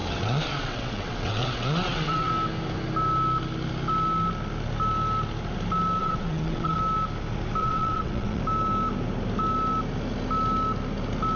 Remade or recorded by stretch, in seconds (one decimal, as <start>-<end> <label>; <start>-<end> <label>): 0.0-2.3 remade; 2.3-6.0 recorded; 6.0-6.8 remade; 6.8-7.6 recorded; 7.6-8.4 remade; 8.4-11.4 recorded